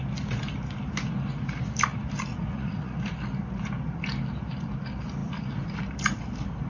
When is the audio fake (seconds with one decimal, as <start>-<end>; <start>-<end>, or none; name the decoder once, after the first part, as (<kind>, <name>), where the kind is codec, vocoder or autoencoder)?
2.3-3.0 (vocoder, Vocos)